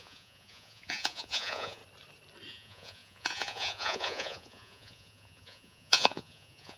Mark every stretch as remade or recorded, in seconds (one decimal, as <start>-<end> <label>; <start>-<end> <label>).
0.0-1.8 remade; 1.8-2.5 recorded; 2.5-6.8 remade